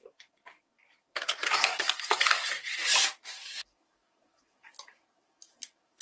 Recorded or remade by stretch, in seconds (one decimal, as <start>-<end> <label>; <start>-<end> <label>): 0.0-6.0 remade